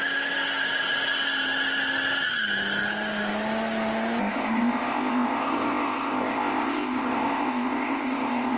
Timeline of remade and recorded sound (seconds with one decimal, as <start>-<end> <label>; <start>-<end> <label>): 0.0-4.2 recorded; 4.2-8.6 remade